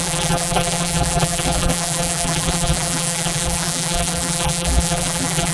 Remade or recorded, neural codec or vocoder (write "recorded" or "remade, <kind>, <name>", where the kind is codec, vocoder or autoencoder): remade, vocoder, BigVGAN v2